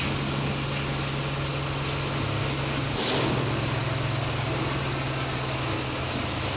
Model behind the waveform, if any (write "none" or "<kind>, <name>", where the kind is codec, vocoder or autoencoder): none